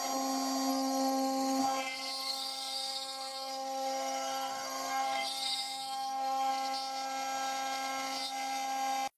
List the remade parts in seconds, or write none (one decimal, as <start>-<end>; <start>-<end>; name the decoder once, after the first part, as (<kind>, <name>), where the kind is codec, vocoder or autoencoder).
0.7-1.6 (codec, SNAC); 2.2-6.5